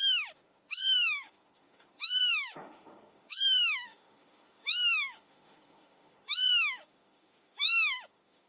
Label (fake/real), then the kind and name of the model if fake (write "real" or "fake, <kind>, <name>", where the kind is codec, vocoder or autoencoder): fake, autoencoder, DAC-VAE